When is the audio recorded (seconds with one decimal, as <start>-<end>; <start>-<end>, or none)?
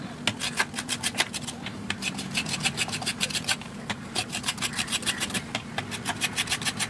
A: 0.0-1.7; 5.8-6.9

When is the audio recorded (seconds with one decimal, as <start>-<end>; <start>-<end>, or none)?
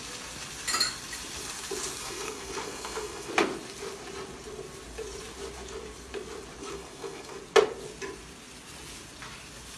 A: 0.0-2.0; 3.3-6.6; 7.4-9.8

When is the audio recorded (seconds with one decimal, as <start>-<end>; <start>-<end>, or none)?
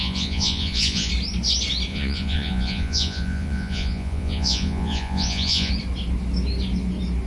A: 1.1-1.9; 5.7-7.3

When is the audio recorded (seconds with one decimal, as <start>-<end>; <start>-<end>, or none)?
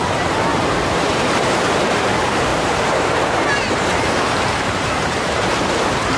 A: 0.0-0.5; 2.1-2.5